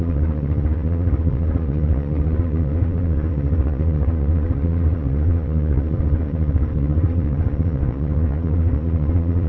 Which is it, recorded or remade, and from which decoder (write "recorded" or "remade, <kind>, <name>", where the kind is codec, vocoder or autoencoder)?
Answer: remade, vocoder, Vocos